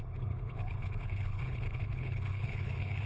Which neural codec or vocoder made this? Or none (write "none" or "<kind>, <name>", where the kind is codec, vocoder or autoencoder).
codec, HILCodec